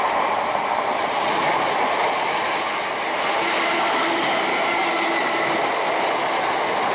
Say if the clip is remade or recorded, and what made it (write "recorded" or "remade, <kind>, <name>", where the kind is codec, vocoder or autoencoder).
recorded